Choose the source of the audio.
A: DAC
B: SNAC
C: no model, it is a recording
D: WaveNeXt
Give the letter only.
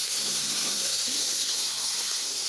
B